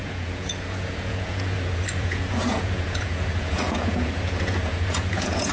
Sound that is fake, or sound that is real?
fake